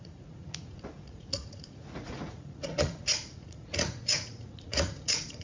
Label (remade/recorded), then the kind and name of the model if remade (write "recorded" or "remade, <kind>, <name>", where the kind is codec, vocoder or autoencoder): remade, vocoder, Vocos